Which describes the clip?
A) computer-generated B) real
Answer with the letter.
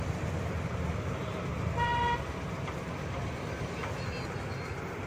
B